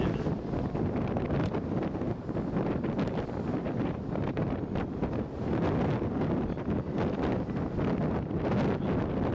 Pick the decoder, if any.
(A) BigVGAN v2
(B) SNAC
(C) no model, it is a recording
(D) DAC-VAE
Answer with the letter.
C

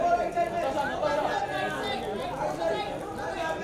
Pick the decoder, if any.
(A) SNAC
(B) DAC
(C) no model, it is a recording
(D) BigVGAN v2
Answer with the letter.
C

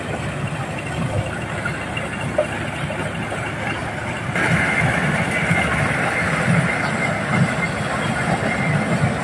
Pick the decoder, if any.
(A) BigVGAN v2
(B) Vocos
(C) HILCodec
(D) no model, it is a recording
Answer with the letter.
D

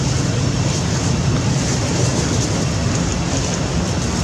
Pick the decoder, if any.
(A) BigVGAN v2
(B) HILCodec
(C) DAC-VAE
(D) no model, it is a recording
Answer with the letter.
A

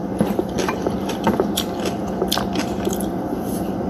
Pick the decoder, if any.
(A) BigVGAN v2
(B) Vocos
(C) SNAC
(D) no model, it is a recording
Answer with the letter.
A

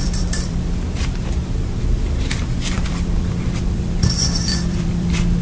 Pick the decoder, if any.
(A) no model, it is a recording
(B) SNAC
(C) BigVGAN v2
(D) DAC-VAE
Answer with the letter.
C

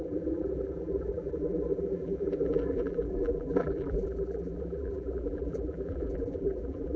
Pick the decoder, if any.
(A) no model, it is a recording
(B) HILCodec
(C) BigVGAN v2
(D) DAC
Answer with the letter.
C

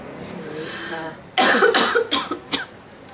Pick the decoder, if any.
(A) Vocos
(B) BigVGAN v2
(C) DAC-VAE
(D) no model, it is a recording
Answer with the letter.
D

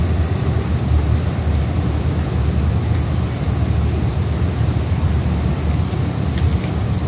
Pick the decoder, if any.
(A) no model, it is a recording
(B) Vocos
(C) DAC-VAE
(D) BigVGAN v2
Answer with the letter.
A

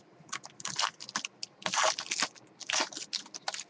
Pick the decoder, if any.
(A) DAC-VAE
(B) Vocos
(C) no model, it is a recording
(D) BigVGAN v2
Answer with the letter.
C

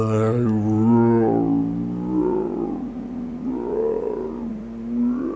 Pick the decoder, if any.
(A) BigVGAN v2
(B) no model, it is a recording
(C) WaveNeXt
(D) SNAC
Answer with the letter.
B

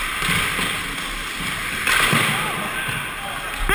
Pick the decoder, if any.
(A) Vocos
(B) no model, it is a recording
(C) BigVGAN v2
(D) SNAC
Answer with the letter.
B